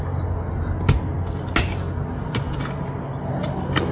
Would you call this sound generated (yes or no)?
no